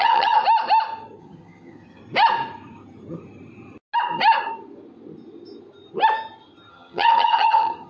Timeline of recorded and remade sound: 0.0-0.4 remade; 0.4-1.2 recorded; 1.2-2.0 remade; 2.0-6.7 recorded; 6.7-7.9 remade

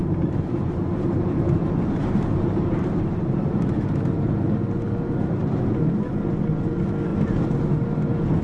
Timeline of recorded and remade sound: 0.0-3.6 remade; 3.6-7.1 recorded; 7.1-7.6 remade; 7.6-8.4 recorded